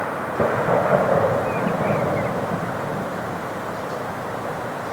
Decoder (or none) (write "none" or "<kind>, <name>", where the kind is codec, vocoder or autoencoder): vocoder, BigVGAN v2